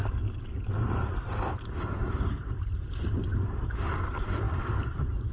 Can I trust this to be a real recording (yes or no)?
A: yes